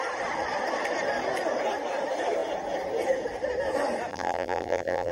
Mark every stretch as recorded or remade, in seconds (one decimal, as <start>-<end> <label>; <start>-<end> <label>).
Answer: 0.0-4.1 recorded; 4.1-5.1 remade